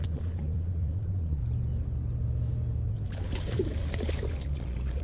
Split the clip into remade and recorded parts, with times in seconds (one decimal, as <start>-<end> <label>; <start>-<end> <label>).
0.0-1.4 remade; 1.4-4.4 recorded; 4.4-5.0 remade